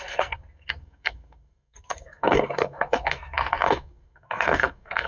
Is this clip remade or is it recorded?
remade